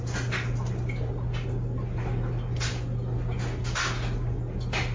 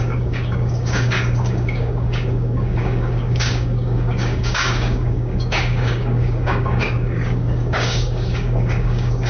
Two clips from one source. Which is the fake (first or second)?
second